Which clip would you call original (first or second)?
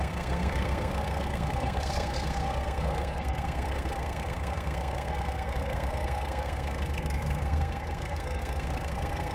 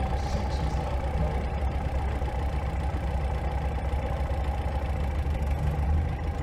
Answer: second